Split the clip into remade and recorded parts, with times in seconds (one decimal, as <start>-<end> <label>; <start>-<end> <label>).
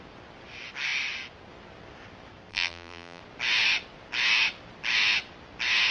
0.0-2.5 recorded; 2.5-3.2 remade; 3.2-5.9 recorded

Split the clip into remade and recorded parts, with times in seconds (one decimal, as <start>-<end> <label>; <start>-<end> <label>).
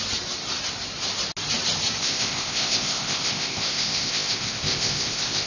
0.0-2.0 recorded; 2.0-5.5 remade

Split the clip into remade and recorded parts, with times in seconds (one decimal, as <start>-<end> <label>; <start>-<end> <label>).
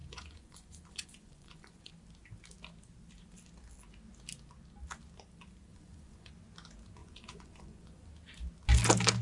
0.0-1.9 remade; 1.9-5.7 recorded; 5.7-6.3 remade; 6.3-7.0 recorded; 7.0-8.1 remade; 8.1-9.2 recorded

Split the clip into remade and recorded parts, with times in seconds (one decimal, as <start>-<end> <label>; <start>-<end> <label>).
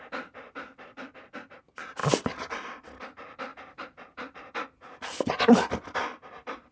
0.0-2.0 remade; 2.0-3.0 recorded; 3.0-6.7 remade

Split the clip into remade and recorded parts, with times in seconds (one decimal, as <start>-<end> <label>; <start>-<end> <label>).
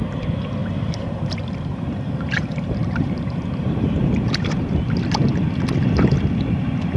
0.0-0.6 recorded; 0.6-4.8 remade; 4.8-7.0 recorded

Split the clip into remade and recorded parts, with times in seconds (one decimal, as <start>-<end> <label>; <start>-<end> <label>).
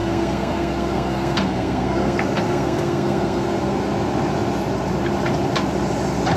0.0-3.8 remade; 3.8-6.4 recorded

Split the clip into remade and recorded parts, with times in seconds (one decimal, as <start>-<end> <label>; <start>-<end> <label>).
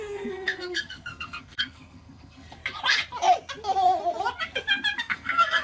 0.0-2.6 remade; 2.6-5.0 recorded; 5.0-5.6 remade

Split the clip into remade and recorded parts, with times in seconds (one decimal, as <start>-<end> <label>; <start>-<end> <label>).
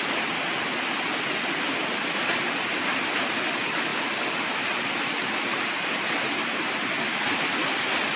0.0-8.2 recorded